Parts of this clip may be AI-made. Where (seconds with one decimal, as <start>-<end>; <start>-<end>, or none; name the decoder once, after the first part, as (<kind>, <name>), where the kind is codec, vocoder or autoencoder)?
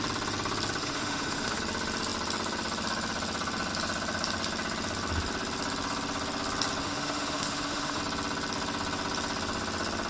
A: 0.8-1.6 (autoencoder, DAC-VAE); 6.8-8.0